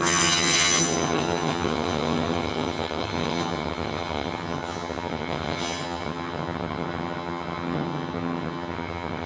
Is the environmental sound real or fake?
fake